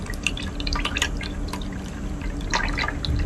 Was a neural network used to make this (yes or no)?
no